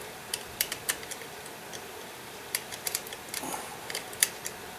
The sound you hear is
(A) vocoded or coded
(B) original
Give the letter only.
A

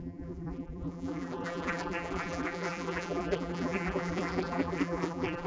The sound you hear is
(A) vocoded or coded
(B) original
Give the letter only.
A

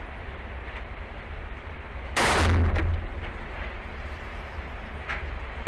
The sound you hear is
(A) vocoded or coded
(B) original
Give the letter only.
B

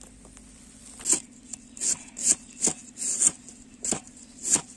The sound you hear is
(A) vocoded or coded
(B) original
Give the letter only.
B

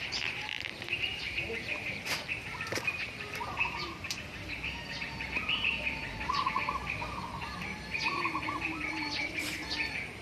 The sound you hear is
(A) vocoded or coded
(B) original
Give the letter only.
A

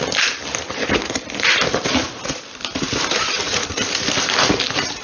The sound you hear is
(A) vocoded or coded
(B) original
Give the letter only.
A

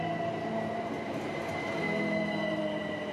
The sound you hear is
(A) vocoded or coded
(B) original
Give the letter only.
B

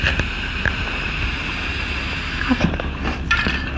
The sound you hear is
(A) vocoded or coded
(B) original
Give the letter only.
B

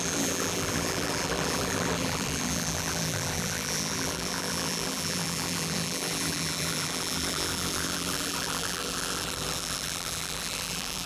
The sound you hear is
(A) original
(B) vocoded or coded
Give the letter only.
B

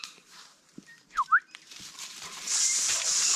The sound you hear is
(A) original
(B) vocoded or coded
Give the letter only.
B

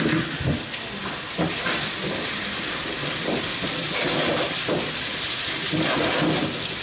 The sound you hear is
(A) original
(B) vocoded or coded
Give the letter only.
B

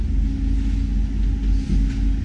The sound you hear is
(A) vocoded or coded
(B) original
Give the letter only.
B